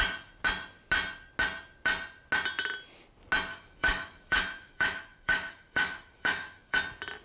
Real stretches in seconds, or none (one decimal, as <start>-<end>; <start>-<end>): 0.0-3.5; 6.8-7.2